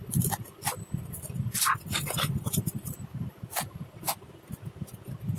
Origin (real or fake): fake